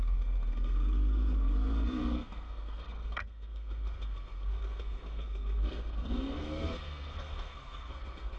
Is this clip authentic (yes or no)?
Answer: no